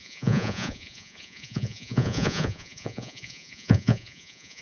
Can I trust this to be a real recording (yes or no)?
no